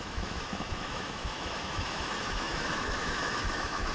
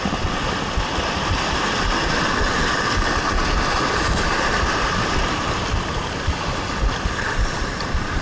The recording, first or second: second